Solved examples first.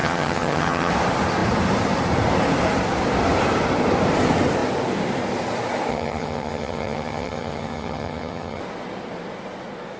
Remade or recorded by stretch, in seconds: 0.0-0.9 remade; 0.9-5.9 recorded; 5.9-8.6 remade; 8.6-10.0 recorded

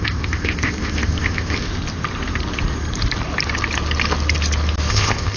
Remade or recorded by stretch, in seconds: 0.0-1.7 remade; 1.7-4.9 recorded; 4.9-5.4 remade

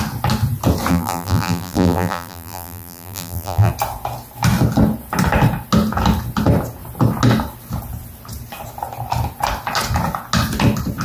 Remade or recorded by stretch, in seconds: 0.0-0.9 recorded; 0.9-3.7 remade; 3.7-11.0 recorded

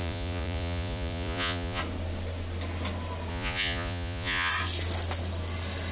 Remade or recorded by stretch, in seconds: 0.0-1.8 remade; 1.8-3.3 recorded; 3.3-4.5 remade; 4.5-5.9 recorded

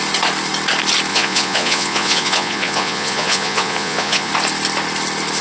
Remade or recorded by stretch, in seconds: 0.0-1.1 recorded; 1.1-4.3 remade; 4.3-5.4 recorded

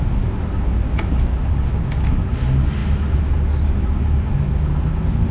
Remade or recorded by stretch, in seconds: 0.0-5.3 recorded

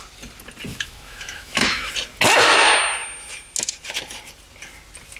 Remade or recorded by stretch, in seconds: 0.0-0.7 recorded; 0.7-1.9 remade; 1.9-5.2 recorded